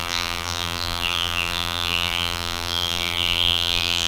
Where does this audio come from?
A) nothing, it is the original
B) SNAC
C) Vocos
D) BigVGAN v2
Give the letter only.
D